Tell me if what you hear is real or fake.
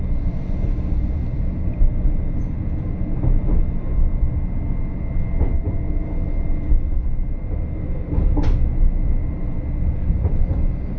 real